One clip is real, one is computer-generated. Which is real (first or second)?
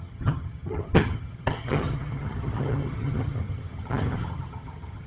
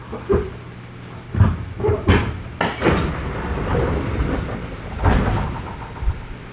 second